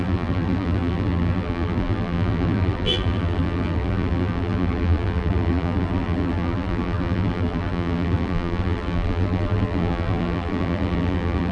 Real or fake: fake